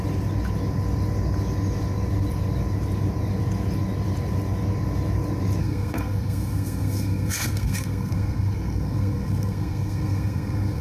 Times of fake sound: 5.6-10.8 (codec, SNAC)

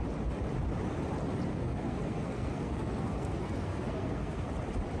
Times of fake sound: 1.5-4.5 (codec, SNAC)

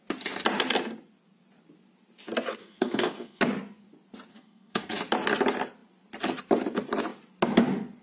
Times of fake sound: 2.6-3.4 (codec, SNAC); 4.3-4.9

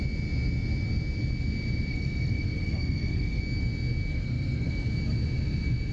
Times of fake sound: 1.9-3.4 (codec, SNAC); 4.1-4.7